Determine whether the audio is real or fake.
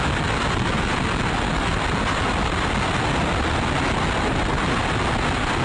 real